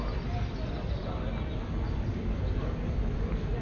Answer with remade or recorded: recorded